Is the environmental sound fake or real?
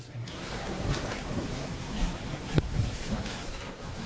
fake